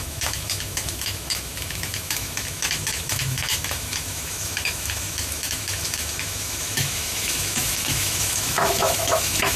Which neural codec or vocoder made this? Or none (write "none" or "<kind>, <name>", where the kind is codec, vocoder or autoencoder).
autoencoder, DAC-VAE